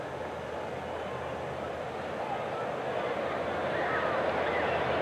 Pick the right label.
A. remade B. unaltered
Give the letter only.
B